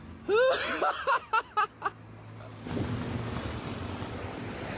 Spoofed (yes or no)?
no